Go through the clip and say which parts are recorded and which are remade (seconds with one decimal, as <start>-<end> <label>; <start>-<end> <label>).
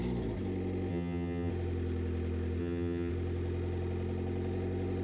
0.0-0.9 recorded; 0.9-1.5 remade; 1.5-2.6 recorded; 2.6-3.1 remade; 3.1-5.0 recorded